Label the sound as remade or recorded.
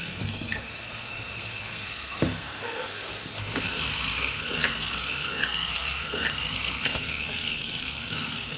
remade